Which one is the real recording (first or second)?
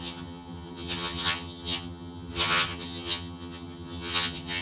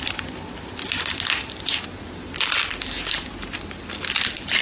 second